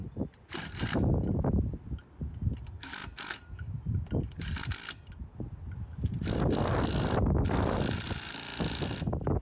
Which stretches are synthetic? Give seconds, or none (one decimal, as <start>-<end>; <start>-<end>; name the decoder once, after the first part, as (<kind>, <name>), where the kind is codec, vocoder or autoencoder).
none